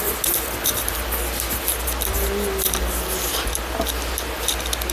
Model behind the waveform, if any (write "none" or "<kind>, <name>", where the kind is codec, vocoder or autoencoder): none